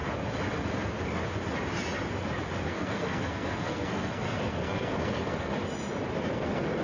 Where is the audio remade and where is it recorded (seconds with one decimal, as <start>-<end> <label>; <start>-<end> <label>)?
0.0-2.6 recorded; 2.6-5.5 remade; 5.5-6.3 recorded; 6.3-6.8 remade